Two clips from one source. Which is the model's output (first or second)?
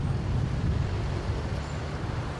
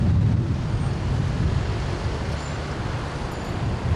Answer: first